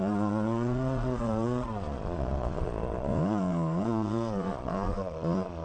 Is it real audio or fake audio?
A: fake